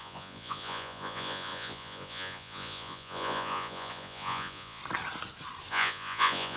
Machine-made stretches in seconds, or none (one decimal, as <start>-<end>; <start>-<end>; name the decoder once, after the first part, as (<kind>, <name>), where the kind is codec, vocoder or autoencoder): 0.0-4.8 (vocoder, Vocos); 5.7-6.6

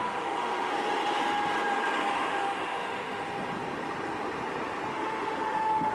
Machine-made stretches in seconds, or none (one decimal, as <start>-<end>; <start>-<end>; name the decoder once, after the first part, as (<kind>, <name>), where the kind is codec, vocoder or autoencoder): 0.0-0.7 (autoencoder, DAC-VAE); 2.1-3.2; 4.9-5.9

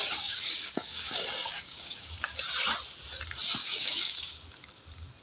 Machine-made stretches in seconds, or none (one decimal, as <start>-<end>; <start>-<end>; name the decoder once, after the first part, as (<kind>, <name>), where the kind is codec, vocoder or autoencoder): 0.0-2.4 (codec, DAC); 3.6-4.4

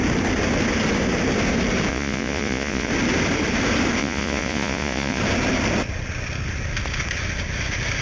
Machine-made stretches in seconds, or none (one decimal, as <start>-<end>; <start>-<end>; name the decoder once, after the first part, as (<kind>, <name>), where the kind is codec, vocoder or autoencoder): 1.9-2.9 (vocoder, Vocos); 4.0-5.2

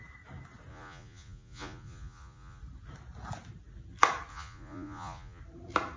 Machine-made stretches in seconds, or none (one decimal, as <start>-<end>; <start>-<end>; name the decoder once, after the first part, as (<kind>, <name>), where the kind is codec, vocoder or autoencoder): 0.7-2.6 (vocoder, Vocos); 4.3-5.4